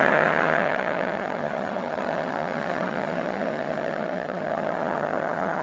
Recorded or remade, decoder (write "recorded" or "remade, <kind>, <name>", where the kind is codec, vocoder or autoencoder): remade, vocoder, HiFi-GAN